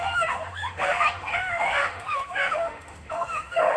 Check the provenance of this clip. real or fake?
fake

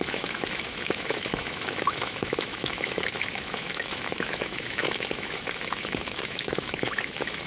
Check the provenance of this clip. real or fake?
fake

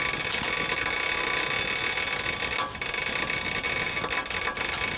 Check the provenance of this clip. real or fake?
real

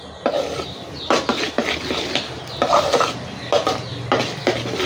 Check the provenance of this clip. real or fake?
real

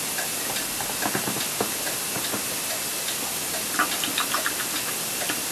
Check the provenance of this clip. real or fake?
real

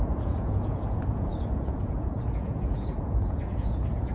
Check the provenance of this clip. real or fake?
fake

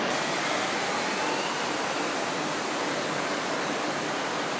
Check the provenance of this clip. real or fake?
real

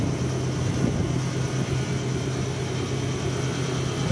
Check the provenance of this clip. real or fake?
real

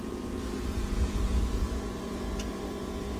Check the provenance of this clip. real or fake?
fake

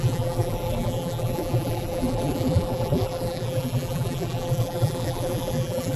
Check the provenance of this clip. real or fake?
fake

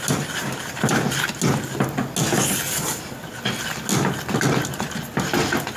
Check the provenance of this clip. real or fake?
real